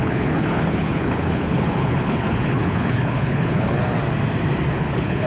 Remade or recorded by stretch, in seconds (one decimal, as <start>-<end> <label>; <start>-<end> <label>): 0.0-4.0 remade; 4.0-4.7 recorded; 4.7-5.3 remade